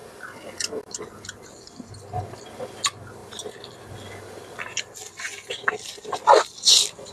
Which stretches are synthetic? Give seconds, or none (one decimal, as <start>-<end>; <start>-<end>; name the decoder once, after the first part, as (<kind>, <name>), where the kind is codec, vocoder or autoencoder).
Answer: none